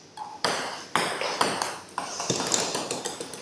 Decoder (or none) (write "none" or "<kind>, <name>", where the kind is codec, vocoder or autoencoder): none